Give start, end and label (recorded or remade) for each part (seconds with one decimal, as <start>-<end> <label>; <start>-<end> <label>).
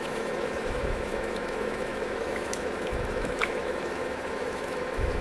0.0-5.2 remade